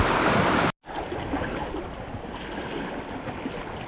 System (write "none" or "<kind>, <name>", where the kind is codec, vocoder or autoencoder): none